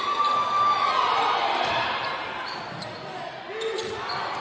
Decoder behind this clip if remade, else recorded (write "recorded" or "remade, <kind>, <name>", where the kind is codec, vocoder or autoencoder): recorded